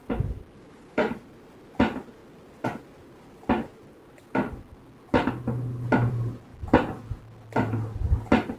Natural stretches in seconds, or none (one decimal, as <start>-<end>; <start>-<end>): 0.0-8.6